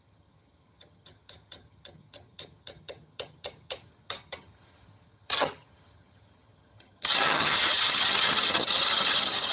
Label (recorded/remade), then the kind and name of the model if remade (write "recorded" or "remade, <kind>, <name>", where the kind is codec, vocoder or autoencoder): remade, vocoder, HiFi-GAN